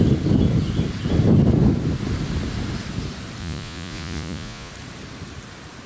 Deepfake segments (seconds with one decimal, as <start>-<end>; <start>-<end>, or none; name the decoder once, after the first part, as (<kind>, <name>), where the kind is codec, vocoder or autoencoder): 3.4-4.7 (vocoder, Vocos)